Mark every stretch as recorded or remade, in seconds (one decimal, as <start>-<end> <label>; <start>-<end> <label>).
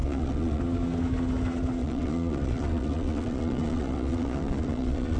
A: 0.0-0.6 remade; 0.6-1.8 recorded; 1.8-5.2 remade